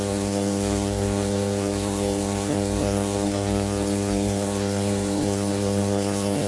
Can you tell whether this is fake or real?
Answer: fake